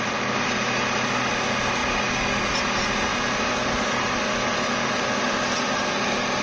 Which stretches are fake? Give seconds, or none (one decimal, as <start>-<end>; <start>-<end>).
none